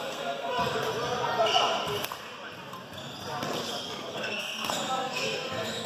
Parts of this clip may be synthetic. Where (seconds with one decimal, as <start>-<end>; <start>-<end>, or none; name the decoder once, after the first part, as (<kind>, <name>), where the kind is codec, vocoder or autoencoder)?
0.0-0.6 (codec, SNAC); 4.1-5.9